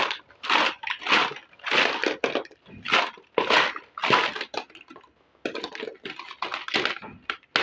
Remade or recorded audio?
recorded